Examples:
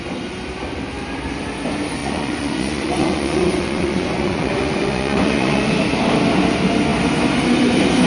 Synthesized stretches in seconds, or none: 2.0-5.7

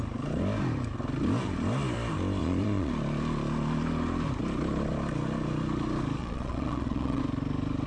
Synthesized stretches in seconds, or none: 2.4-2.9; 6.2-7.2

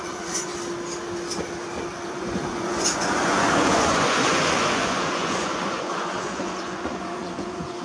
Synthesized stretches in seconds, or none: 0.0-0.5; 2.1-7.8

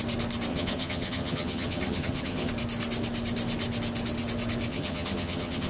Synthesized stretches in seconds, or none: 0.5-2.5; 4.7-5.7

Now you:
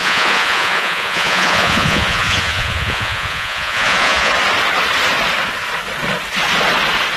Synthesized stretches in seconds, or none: 0.0-4.3

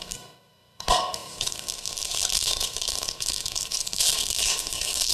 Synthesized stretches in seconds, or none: 0.0-5.1

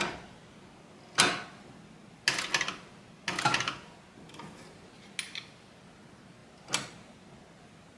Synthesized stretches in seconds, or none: none

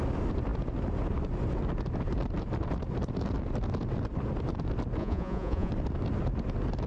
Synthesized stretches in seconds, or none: 5.0-5.7